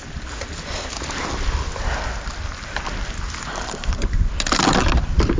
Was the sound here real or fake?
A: real